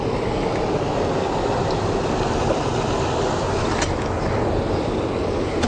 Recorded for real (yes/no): yes